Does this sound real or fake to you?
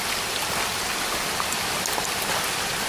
real